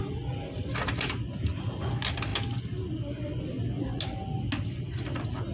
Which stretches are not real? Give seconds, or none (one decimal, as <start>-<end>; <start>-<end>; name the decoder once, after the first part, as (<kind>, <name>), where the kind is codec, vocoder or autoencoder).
none